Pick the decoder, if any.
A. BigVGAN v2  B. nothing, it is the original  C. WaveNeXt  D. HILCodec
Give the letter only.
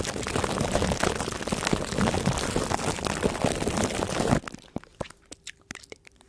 B